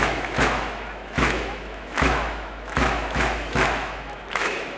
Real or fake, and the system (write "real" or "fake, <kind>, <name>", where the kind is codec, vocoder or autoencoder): fake, autoencoder, DAC-VAE